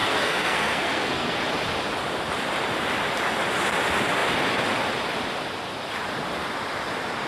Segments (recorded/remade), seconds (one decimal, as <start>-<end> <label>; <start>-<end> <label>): 0.0-1.4 remade; 1.4-7.3 recorded